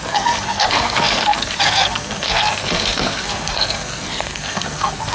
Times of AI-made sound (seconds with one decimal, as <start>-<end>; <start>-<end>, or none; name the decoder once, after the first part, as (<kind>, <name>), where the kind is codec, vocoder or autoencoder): 0.0-5.1 (codec, SNAC)